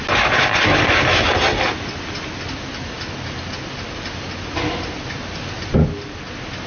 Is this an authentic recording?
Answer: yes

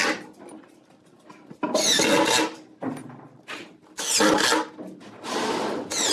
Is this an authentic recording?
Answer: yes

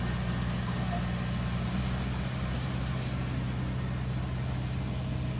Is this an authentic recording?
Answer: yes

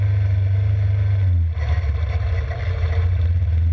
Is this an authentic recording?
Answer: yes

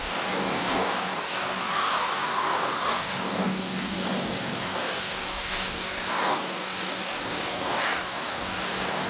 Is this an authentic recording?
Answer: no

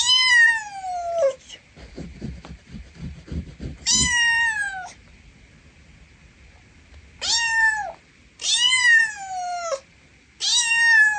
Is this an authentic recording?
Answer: yes